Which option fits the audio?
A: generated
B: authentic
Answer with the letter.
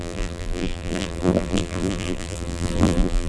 A